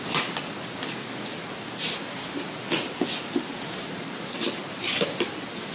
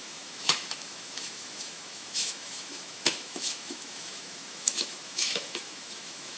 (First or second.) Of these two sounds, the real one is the first